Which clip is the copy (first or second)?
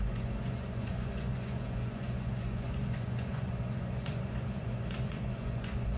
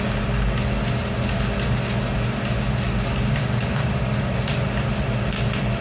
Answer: first